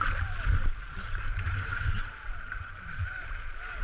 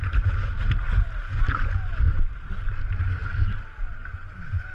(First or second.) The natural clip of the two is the second